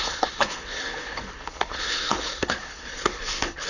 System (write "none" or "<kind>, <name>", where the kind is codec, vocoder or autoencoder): codec, HILCodec